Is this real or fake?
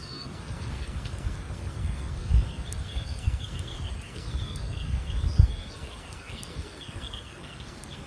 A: fake